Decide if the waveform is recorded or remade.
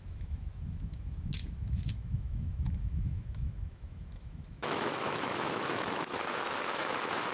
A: remade